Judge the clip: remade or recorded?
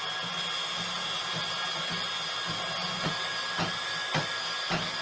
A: recorded